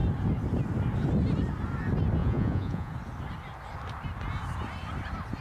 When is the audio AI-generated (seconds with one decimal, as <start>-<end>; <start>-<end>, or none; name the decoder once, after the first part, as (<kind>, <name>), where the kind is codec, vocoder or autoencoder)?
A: 2.2-2.9 (vocoder, Vocos)